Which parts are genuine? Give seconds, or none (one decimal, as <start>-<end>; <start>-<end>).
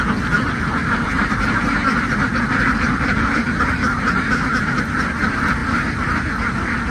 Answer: 0.0-0.8; 4.8-6.9